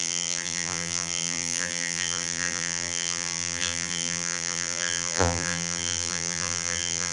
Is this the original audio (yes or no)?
no